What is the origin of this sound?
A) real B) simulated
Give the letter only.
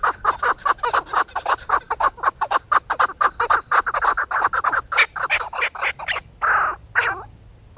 A